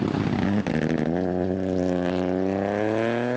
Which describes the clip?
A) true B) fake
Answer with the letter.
A